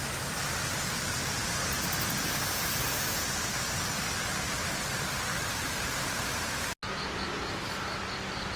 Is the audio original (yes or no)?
yes